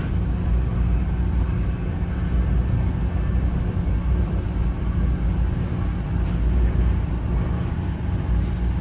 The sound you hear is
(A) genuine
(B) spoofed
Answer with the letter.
A